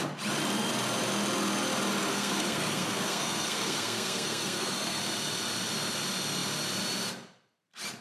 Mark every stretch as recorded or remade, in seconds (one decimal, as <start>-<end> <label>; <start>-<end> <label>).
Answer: 0.0-2.1 recorded; 2.1-5.0 remade; 5.0-8.0 recorded